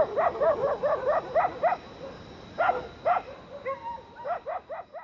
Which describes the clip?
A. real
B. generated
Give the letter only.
A